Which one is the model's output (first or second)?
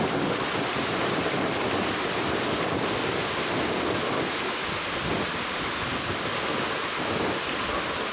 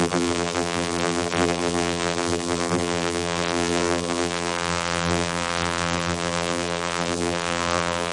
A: second